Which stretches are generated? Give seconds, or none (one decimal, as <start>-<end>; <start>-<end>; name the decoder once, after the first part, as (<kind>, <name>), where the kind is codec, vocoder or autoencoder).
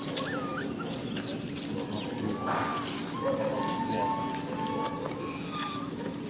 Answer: none